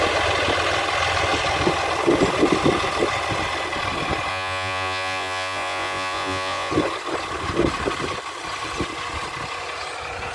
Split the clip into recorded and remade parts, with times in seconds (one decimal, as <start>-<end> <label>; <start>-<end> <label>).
0.0-4.3 recorded; 4.3-6.7 remade; 6.7-10.3 recorded